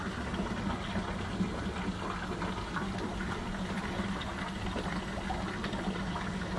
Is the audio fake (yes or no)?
no